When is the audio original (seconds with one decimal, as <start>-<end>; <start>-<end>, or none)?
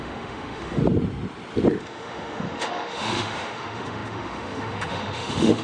0.8-1.8